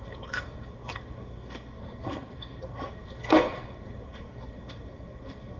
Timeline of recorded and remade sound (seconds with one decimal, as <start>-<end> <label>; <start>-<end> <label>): 0.0-5.6 remade